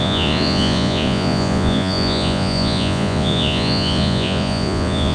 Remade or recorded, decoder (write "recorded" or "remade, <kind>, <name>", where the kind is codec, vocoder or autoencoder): remade, vocoder, Vocos